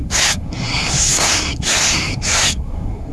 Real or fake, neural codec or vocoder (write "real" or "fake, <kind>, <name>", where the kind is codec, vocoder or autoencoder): fake, codec, SNAC